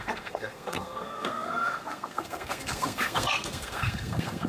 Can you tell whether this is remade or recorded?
remade